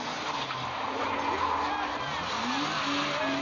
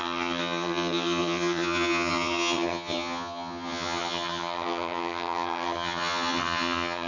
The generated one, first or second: second